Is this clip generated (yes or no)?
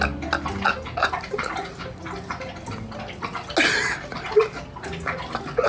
no